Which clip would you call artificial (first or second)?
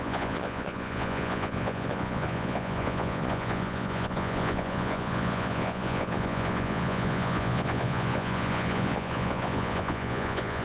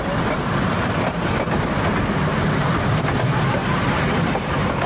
first